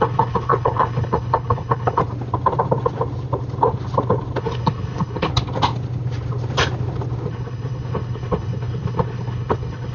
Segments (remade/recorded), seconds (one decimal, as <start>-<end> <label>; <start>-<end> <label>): 0.0-2.0 remade; 2.0-4.4 recorded; 4.4-5.3 remade; 5.3-7.3 recorded; 7.3-9.9 remade